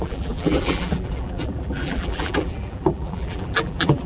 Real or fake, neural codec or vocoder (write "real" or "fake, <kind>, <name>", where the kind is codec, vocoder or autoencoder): fake, vocoder, BigVGAN v2